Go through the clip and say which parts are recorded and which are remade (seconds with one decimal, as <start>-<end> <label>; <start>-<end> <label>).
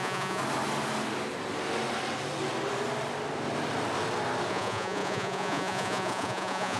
0.0-0.4 remade; 0.4-4.5 recorded; 4.5-6.8 remade